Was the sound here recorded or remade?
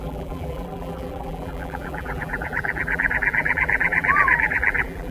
remade